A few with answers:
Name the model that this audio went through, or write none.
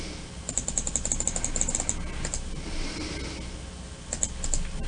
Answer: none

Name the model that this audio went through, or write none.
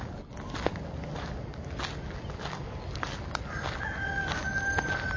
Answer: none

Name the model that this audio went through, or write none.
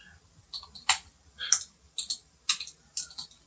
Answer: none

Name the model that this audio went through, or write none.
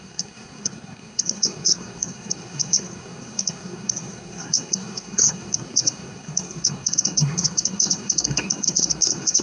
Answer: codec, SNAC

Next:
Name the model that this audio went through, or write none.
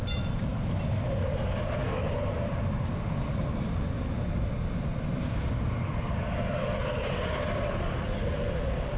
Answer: none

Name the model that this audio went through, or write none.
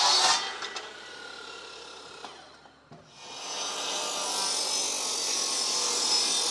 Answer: none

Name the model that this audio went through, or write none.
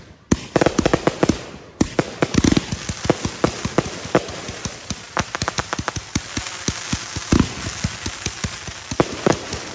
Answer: none